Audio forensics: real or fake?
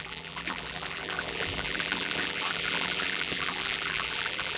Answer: fake